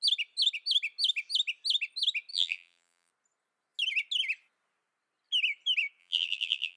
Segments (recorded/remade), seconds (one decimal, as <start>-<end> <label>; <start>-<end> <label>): 0.0-2.3 recorded; 2.3-3.1 remade; 3.1-6.0 recorded; 6.0-6.8 remade